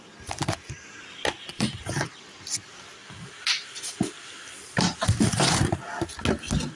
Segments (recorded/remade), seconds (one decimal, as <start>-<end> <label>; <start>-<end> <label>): 0.0-1.5 recorded; 1.5-2.2 remade; 2.2-3.0 recorded; 3.0-5.8 remade; 5.8-6.8 recorded